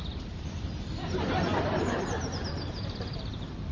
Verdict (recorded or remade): remade